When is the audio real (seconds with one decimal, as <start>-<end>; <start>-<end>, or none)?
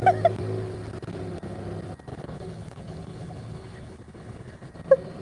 0.0-2.1; 4.7-5.2